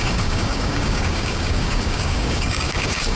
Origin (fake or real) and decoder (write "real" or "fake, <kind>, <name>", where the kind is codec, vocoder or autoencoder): fake, codec, DAC